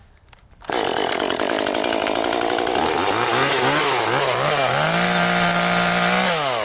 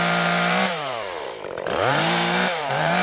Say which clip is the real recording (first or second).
first